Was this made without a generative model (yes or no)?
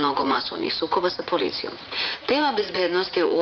no